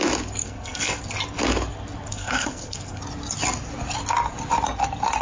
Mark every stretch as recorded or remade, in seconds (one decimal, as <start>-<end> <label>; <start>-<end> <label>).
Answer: 0.0-0.4 recorded; 0.4-1.0 remade; 1.0-2.1 recorded; 2.1-3.0 remade; 3.0-5.2 recorded